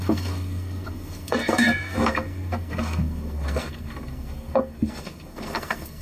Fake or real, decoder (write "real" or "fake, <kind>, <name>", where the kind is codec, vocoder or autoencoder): fake, codec, SNAC